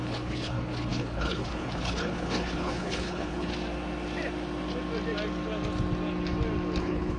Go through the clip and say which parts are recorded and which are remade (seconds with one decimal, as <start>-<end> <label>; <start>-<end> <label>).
0.0-3.5 remade; 3.5-6.8 recorded; 6.8-7.2 remade